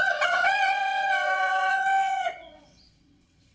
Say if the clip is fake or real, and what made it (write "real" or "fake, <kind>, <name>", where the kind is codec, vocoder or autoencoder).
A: fake, vocoder, WaveNeXt